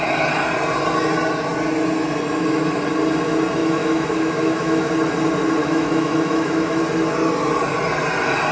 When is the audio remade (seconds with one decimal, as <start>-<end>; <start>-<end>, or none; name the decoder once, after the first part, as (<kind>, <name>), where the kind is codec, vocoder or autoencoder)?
3.6-4.9 (autoencoder, DAC-VAE); 5.6-6.8